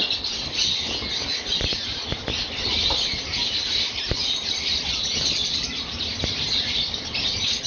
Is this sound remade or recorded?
recorded